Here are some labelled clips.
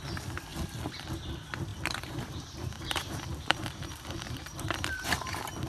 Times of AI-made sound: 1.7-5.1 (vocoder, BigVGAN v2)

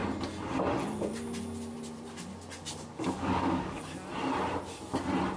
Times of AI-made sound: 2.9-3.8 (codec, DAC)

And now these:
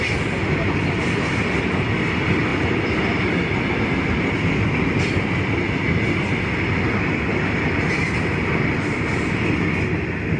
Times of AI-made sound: none

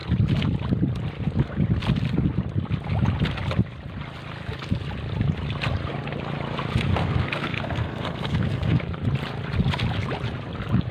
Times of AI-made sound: 6.9-8.8 (codec, SNAC)

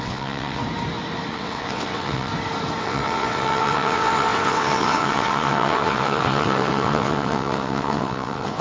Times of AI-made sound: 0.0-0.6 (vocoder, WaveNeXt); 1.3-2.3; 2.8-8.6

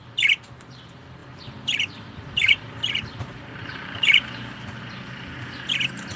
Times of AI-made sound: 1.2-4.9 (vocoder, BigVGAN v2)

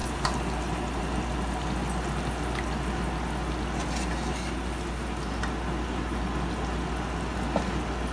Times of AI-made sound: none